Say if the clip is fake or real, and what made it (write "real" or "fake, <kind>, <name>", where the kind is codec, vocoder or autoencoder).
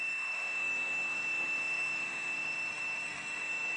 fake, autoencoder, DAC-VAE